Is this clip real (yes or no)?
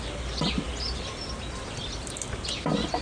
yes